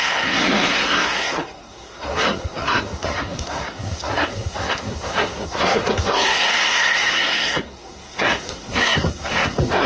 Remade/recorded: remade